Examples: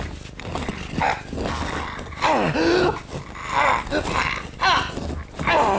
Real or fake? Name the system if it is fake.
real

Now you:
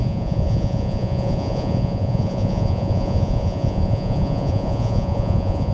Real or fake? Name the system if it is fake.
fake, vocoder, Vocos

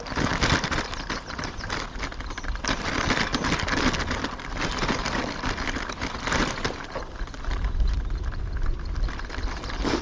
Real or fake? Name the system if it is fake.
real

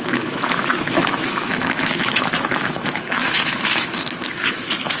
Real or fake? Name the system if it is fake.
fake, autoencoder, DAC-VAE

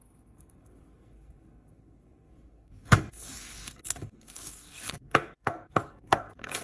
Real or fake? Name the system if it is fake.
fake, codec, SNAC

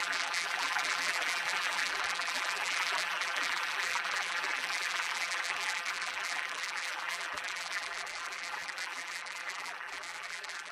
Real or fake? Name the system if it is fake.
fake, vocoder, BigVGAN v2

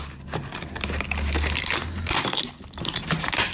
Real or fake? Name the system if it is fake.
real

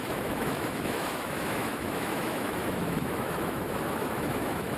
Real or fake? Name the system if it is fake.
fake, autoencoder, DAC-VAE